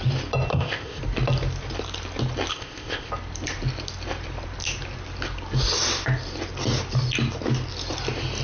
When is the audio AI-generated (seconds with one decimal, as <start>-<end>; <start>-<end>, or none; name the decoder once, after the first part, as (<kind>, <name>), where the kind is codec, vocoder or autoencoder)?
0.5-1.0 (codec, ZipCodec); 2.5-3.1